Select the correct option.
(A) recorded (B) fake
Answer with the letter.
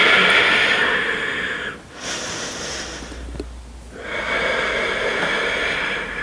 A